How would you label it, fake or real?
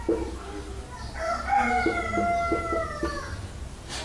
real